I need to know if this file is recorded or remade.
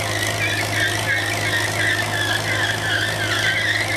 recorded